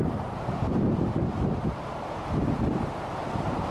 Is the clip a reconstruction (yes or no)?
yes